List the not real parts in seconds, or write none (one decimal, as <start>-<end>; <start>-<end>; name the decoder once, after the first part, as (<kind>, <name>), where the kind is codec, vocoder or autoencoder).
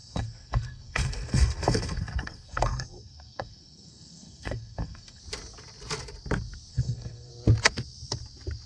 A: 0.0-5.2 (codec, SNAC); 6.7-7.3